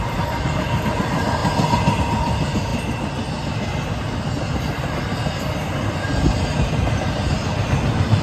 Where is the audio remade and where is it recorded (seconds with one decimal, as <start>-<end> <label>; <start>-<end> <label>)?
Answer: 0.0-8.2 recorded